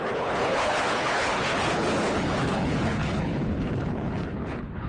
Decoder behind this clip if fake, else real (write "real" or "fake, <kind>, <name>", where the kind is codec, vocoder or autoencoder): fake, codec, HILCodec